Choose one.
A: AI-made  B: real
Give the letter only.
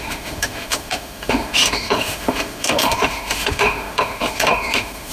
A